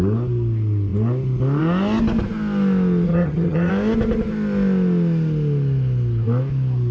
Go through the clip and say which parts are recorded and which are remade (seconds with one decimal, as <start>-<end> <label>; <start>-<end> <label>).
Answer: 0.0-3.1 recorded; 3.1-3.7 remade; 3.7-6.9 recorded